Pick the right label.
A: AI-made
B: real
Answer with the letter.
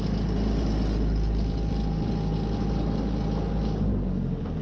B